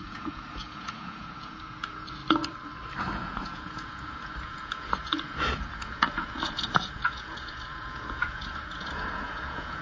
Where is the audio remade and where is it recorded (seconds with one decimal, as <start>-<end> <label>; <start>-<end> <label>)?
0.0-2.2 remade; 2.2-3.0 recorded; 3.0-9.8 remade